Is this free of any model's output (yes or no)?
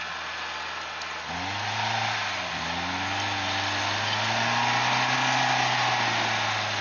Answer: yes